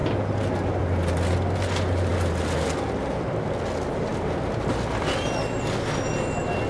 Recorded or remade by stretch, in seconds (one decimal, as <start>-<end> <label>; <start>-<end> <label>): 0.0-6.7 recorded